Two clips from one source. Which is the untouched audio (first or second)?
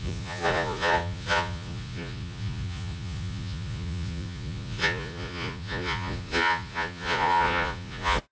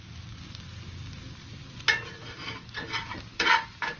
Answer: second